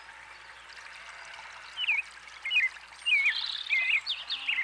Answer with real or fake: real